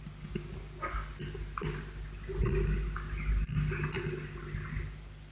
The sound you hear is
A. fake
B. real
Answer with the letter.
B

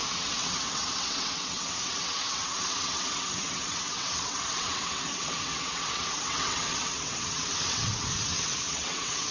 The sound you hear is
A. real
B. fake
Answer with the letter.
B